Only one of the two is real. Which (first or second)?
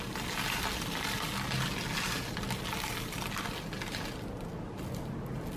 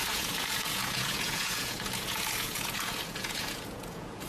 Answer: first